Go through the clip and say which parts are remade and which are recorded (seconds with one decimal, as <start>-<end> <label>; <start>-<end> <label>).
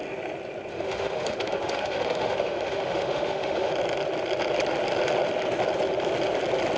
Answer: 0.0-0.7 recorded; 0.7-3.7 remade; 3.7-6.8 recorded